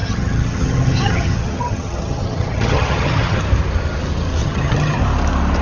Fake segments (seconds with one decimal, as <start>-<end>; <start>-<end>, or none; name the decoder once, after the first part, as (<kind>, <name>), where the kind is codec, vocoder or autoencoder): 0.0-3.4 (vocoder, HiFi-GAN); 4.4-5.0